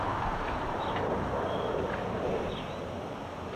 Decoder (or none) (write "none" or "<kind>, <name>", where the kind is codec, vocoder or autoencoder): none